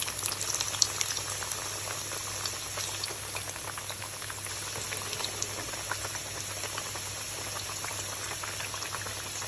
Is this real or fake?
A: real